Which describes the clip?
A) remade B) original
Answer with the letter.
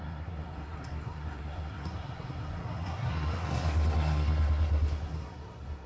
A